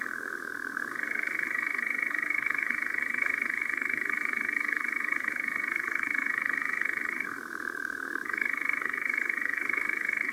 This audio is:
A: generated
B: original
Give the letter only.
A